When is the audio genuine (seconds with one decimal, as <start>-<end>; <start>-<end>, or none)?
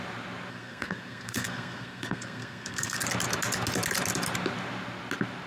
0.0-0.5; 3.0-5.5